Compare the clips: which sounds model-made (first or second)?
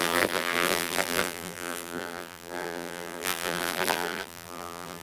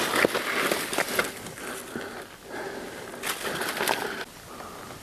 first